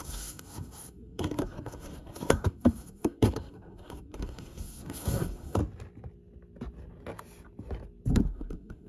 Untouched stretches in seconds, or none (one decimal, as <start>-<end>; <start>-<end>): 5.6-8.1